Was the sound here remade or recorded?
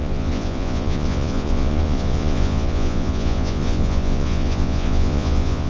remade